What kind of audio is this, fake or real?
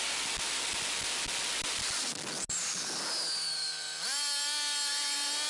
real